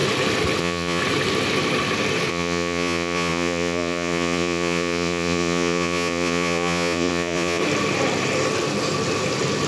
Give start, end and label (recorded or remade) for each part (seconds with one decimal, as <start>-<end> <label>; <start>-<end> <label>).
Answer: 0.0-0.6 recorded; 0.6-1.0 remade; 1.0-2.3 recorded; 2.3-7.6 remade; 7.6-9.7 recorded